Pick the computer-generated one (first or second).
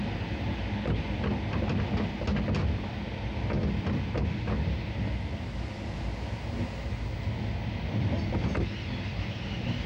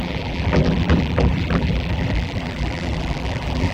second